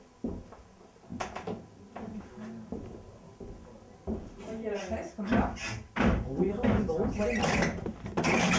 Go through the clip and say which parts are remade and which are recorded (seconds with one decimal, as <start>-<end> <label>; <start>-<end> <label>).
0.0-8.6 recorded